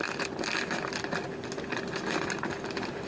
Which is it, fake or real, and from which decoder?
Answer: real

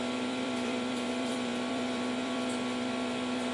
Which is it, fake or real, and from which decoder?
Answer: fake, vocoder, BigVGAN v2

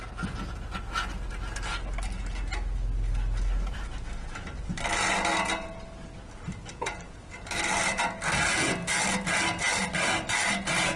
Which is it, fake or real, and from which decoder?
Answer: real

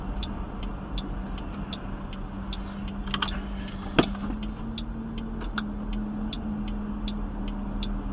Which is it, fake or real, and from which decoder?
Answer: real